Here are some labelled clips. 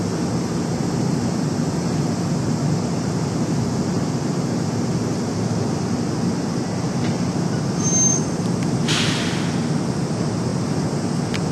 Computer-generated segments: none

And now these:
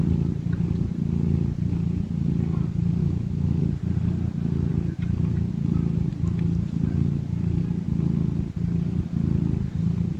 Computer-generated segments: 3.0-3.6 (autoencoder, DAC-VAE)

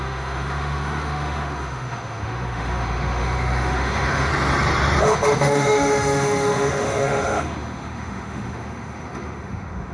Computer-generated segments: 0.0-4.3 (autoencoder, DAC-VAE); 5.0-9.9

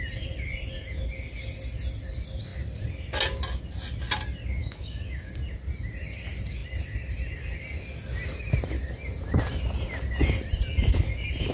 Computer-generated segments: 4.6-5.3 (autoencoder, DAC-VAE)

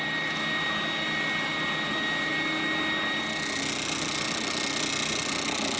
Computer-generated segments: none